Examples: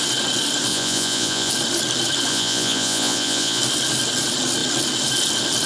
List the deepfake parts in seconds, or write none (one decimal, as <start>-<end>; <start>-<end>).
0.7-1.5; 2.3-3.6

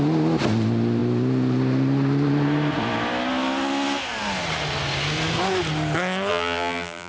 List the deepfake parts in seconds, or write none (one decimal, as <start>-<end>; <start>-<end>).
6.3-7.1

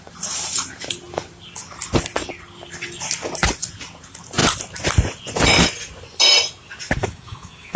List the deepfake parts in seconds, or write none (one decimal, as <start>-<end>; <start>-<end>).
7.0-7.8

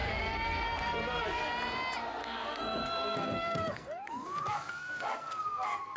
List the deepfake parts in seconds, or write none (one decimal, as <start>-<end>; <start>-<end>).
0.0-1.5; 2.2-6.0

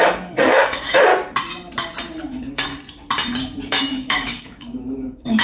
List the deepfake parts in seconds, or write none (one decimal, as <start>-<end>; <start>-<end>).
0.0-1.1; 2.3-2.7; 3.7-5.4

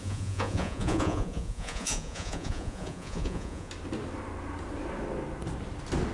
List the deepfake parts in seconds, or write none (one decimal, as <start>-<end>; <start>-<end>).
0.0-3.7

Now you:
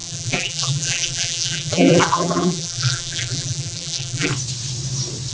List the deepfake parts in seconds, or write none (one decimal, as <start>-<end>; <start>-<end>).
0.0-4.3

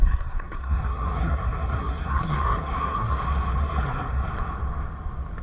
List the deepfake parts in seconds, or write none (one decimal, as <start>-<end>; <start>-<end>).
0.0-3.2; 3.6-4.3